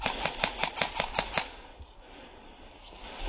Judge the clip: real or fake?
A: real